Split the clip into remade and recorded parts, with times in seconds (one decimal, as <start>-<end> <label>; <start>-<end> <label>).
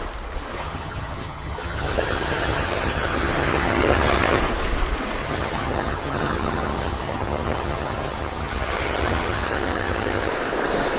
0.0-0.5 recorded; 0.5-4.4 remade; 4.4-5.2 recorded; 5.2-10.3 remade; 10.3-11.0 recorded